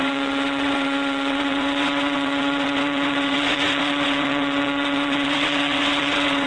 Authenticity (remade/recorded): remade